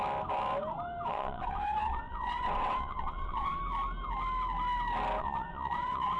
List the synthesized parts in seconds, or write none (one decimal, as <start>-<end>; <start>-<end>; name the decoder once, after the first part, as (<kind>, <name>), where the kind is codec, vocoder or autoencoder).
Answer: 1.1-3.6 (vocoder, WaveNeXt); 5.2-6.2